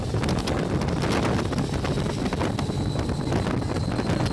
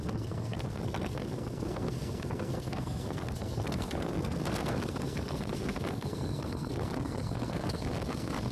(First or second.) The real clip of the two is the first